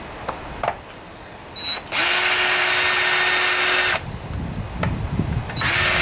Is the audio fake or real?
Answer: real